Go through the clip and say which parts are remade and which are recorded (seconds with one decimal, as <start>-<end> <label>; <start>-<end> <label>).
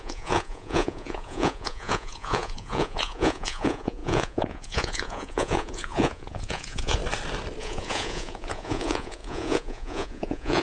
0.0-7.0 remade; 7.0-7.6 recorded; 7.6-10.6 remade